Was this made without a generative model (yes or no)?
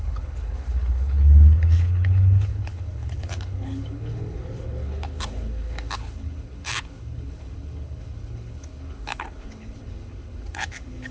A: no